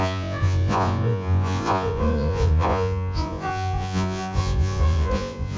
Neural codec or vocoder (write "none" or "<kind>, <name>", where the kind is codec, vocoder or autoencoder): vocoder, Vocos